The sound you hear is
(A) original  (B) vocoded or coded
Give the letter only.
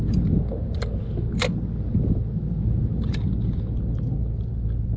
A